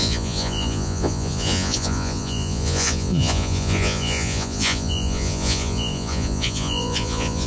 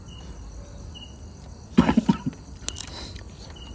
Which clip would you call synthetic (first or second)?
first